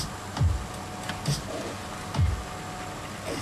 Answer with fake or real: real